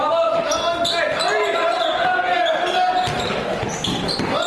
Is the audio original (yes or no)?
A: yes